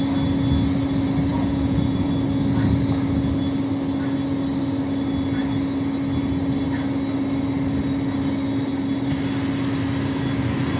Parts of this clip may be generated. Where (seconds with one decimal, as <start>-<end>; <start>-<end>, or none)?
1.3-2.1